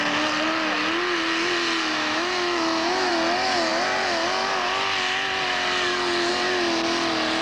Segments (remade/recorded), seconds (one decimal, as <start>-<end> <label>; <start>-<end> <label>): 0.0-1.9 recorded; 1.9-3.1 remade; 3.1-7.4 recorded